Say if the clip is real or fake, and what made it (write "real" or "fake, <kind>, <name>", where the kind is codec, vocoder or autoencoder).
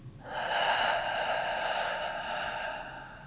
real